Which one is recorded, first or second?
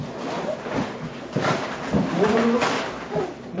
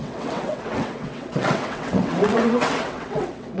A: first